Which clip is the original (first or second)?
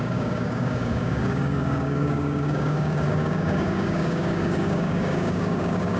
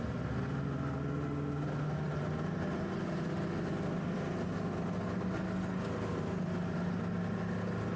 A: second